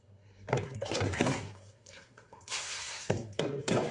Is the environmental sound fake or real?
fake